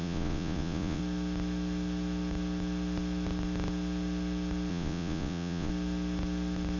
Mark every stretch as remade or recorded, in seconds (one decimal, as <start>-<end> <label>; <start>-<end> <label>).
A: 0.0-1.0 remade; 1.0-4.7 recorded; 4.7-5.7 remade; 5.7-6.8 recorded